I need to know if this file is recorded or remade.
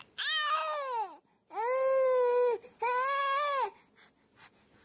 recorded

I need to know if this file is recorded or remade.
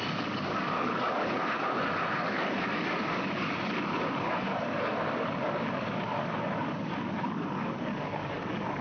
remade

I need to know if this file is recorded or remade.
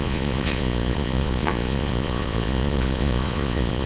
remade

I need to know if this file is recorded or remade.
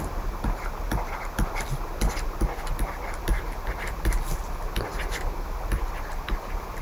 recorded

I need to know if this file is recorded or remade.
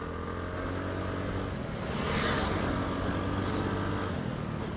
recorded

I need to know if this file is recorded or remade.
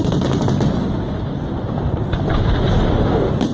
recorded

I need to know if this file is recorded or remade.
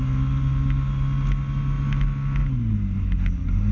recorded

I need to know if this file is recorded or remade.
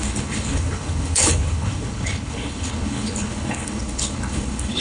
remade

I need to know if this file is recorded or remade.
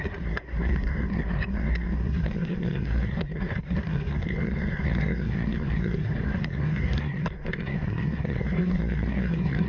remade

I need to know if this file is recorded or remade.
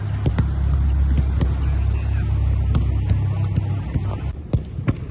recorded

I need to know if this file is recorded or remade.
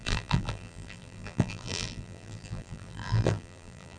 remade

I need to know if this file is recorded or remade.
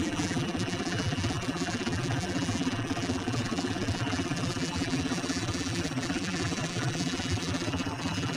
remade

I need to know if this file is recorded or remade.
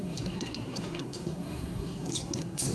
remade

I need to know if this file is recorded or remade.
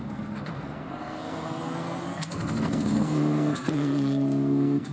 remade